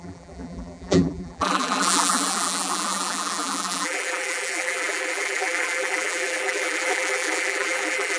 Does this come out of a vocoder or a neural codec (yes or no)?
yes